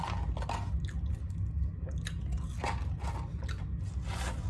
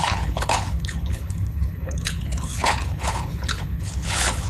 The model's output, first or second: second